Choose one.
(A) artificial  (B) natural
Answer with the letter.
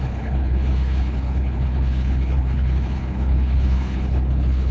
A